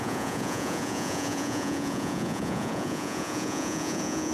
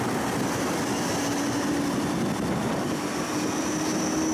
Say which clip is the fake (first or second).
first